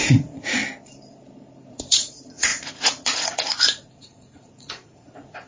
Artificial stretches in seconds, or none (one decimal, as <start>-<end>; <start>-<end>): 0.0-0.6; 1.7-5.5